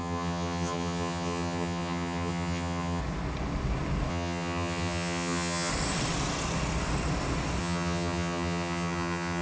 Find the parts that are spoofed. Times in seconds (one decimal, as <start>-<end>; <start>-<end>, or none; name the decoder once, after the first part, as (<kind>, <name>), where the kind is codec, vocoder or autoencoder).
0.0-3.0 (vocoder, HiFi-GAN); 4.1-5.7; 7.6-9.4